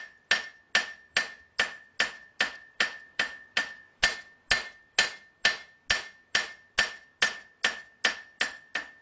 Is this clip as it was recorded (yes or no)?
yes